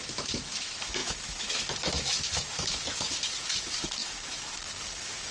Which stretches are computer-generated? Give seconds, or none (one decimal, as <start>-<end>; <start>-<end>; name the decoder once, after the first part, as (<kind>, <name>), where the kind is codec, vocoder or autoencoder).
0.0-5.3 (autoencoder, DAC-VAE)